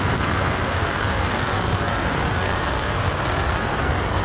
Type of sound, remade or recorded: remade